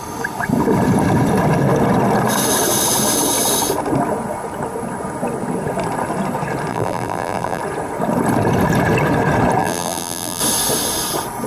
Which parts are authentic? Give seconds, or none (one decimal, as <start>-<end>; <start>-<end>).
0.0-6.7; 7.6-9.6; 10.4-11.5